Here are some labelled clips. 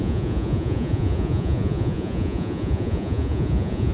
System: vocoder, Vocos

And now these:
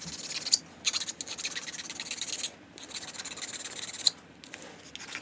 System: none